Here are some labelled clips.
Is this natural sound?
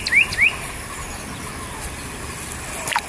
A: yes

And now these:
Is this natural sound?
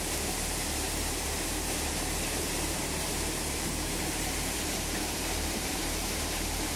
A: no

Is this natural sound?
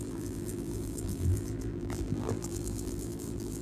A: no